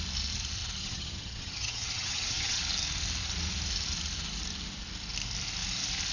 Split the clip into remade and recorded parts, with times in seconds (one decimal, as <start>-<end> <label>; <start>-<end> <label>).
0.0-0.8 recorded; 0.8-2.6 remade; 2.6-6.1 recorded